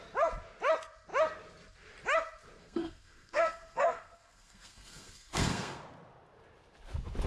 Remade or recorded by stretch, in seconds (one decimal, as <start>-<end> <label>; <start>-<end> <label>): 0.0-2.6 recorded; 2.6-5.8 remade; 5.8-7.3 recorded